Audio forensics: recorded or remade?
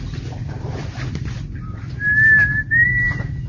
recorded